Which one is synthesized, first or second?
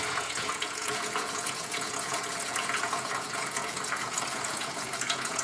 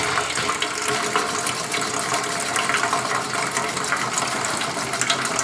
first